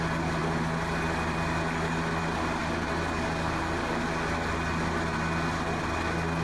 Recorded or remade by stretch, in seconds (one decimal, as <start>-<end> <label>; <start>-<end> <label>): 0.0-6.4 recorded